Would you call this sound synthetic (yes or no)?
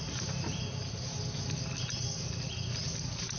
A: no